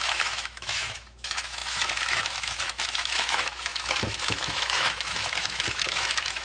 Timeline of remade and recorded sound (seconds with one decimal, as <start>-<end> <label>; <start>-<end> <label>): 0.0-6.4 remade